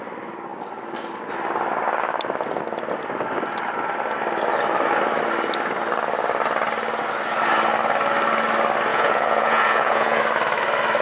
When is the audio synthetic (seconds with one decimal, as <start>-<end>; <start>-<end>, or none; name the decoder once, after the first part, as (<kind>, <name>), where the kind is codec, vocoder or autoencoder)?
8.9-10.2 (vocoder, Vocos)